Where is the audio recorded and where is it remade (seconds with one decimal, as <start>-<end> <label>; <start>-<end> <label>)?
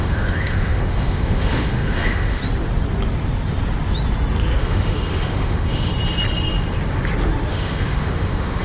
0.0-2.4 remade; 2.4-4.6 recorded; 4.6-5.9 remade; 5.9-7.5 recorded; 7.5-8.6 remade